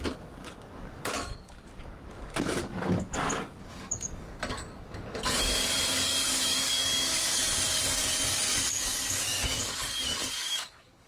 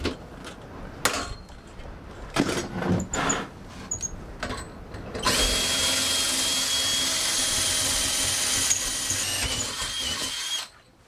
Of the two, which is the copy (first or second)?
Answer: first